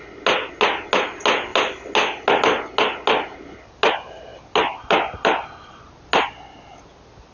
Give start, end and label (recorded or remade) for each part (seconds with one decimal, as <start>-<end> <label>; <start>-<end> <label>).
0.0-7.3 recorded